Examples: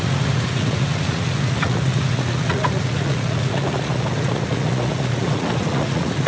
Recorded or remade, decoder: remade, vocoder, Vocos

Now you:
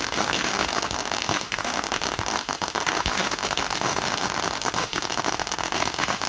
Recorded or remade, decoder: remade, autoencoder, DAC-VAE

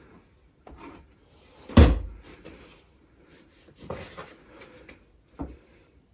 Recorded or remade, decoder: recorded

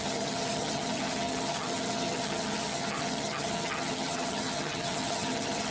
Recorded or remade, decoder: remade, vocoder, HiFi-GAN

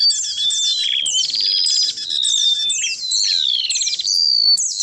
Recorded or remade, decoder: recorded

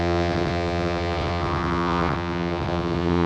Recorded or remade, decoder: remade, vocoder, WaveNeXt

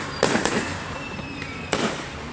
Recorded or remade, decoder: remade, vocoder, BigVGAN v2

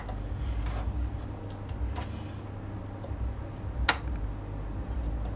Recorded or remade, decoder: recorded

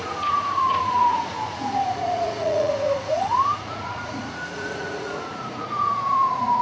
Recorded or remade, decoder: remade, vocoder, Vocos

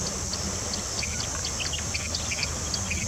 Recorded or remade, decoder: recorded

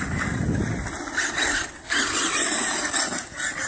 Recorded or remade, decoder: recorded